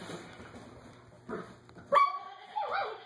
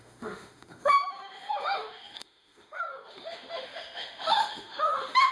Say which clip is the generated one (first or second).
second